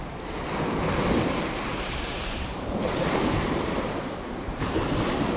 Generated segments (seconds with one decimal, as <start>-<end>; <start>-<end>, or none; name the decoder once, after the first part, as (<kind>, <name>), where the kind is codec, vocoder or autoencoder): 1.7-4.9 (vocoder, BigVGAN v2)